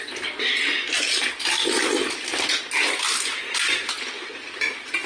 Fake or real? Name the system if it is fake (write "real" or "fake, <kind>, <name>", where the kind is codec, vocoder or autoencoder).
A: real